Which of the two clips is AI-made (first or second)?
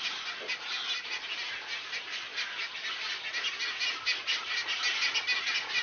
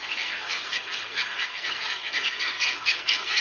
second